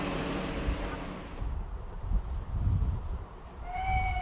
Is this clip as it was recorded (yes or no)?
no